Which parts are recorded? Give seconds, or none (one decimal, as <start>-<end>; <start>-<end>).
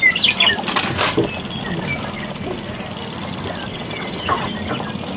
0.0-3.7; 4.5-5.2